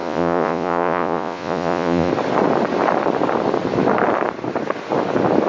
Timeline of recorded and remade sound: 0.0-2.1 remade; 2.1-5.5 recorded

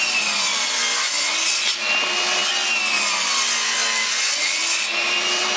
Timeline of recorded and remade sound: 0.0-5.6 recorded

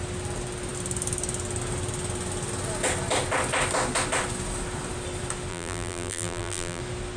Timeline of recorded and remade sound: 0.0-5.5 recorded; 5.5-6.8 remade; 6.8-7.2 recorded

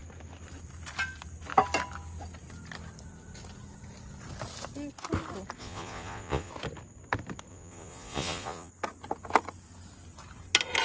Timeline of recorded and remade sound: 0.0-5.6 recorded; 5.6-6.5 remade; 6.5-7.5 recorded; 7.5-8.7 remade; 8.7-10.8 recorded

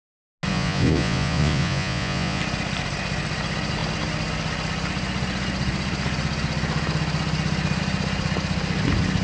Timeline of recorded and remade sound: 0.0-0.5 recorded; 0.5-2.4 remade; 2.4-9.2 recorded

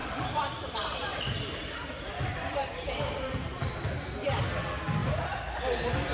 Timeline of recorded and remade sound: 0.0-3.7 remade; 3.7-6.1 recorded

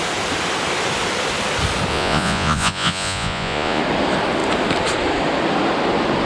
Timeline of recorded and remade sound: 0.0-1.9 recorded; 1.9-3.8 remade; 3.8-6.3 recorded